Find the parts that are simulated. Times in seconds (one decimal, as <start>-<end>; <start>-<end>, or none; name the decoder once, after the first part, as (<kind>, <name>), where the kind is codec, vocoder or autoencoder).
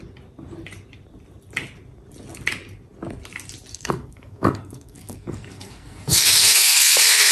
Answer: 3.7-7.3 (codec, SNAC)